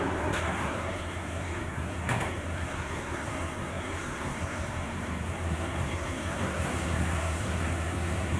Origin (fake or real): fake